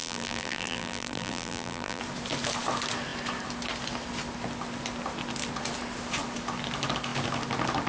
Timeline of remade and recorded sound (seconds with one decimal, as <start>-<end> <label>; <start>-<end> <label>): 0.0-2.0 remade; 2.0-7.9 recorded